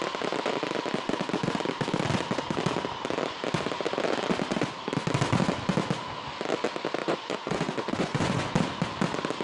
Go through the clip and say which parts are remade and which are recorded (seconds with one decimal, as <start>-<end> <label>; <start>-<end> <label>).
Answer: 0.0-7.0 recorded; 7.0-8.5 remade; 8.5-9.4 recorded